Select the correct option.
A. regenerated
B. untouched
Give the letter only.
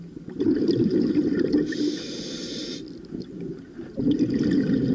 B